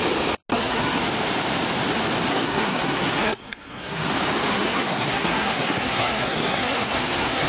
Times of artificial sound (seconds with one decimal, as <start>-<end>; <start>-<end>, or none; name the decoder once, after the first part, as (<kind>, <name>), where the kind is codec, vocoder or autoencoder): 0.5-1.0 (codec, SNAC); 2.3-4.1; 4.5-7.5